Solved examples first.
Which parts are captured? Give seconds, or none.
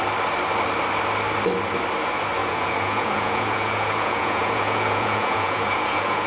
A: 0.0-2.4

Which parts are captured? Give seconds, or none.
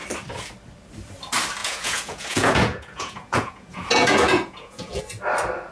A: 0.0-1.6; 5.0-5.7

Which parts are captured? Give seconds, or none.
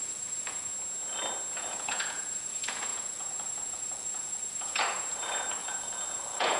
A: 0.7-1.6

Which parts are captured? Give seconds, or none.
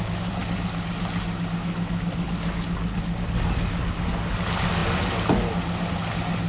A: 0.0-6.5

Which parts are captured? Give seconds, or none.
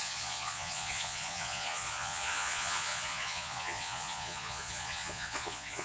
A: none